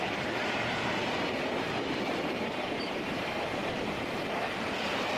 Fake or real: fake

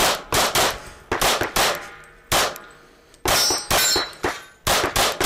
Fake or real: real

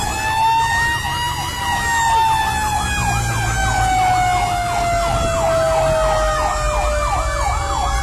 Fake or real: real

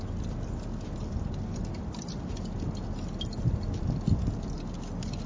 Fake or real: real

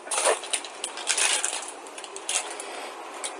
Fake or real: real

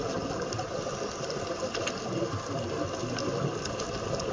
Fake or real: real